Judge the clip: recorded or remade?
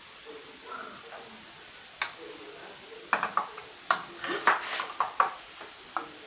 recorded